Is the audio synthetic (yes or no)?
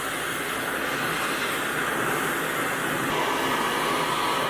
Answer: no